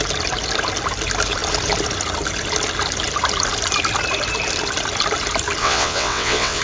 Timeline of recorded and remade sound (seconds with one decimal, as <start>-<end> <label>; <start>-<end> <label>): 0.0-5.6 recorded; 5.6-6.6 remade